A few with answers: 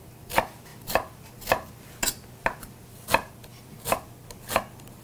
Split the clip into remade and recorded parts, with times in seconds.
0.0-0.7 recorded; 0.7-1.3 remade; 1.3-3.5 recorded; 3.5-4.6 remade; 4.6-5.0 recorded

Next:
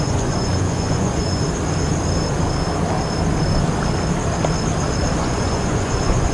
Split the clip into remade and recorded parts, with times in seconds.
0.0-1.4 remade; 1.4-5.2 recorded; 5.2-6.3 remade

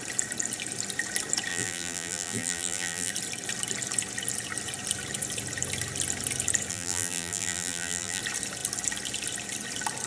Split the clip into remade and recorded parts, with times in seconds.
0.0-1.5 recorded; 1.5-3.1 remade; 3.1-6.7 recorded; 6.7-8.2 remade; 8.2-10.1 recorded

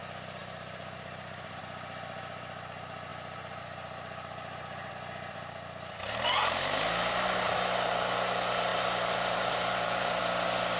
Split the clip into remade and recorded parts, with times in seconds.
0.0-0.4 recorded; 0.4-1.6 remade; 1.6-3.1 recorded; 3.1-4.9 remade; 4.9-8.7 recorded; 8.7-10.2 remade; 10.2-10.8 recorded